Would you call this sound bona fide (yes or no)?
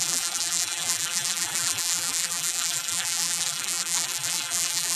no